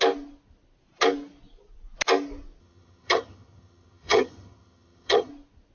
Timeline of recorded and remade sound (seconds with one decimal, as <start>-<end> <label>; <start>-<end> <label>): 0.0-2.6 recorded; 2.6-5.3 remade; 5.3-5.7 recorded